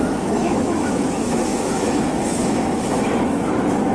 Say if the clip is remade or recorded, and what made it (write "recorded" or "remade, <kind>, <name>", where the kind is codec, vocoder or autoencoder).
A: remade, autoencoder, DAC-VAE